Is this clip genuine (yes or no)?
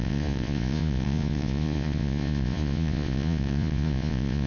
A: no